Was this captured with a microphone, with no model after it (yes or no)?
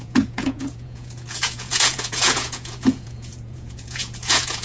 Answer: no